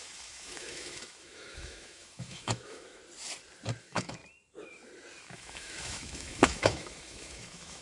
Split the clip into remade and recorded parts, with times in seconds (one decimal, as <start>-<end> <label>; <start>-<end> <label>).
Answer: 0.0-3.0 remade; 3.0-3.8 recorded; 3.8-4.2 remade; 4.2-5.2 recorded; 5.2-7.8 remade